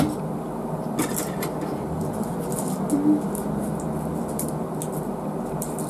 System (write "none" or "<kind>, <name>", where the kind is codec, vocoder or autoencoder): none